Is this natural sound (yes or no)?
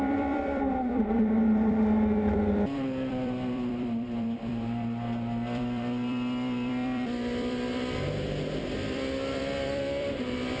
no